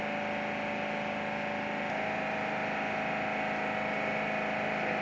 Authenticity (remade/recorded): recorded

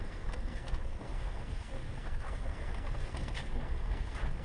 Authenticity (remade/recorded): remade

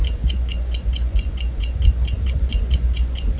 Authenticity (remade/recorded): remade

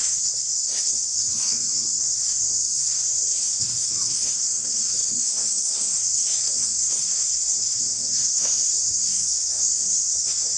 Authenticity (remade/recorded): remade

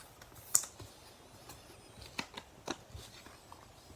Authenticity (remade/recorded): recorded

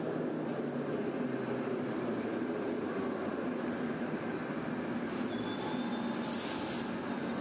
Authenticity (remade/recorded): recorded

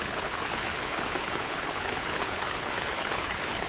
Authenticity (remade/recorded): remade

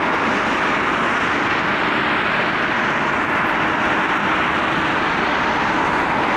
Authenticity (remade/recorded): recorded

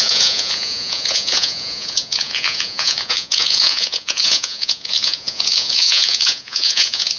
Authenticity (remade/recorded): remade